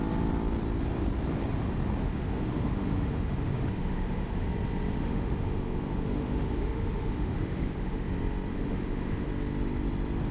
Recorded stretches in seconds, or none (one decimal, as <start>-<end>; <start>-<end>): 0.0-2.0; 4.5-5.0; 8.1-8.5; 9.3-10.3